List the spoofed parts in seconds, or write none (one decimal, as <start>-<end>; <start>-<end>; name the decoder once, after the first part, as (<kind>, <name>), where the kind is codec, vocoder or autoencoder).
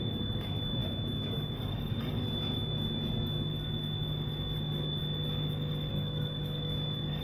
0.0-3.5 (codec, DAC); 4.6-5.0; 5.9-7.2